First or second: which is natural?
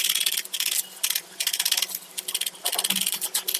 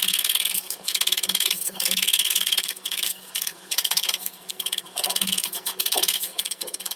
first